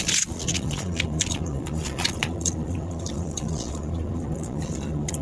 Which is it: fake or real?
fake